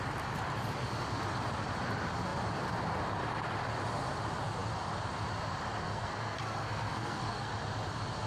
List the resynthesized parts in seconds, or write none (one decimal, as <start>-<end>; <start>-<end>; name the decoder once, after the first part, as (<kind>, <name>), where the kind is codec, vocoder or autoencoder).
5.8-7.5 (codec, SNAC)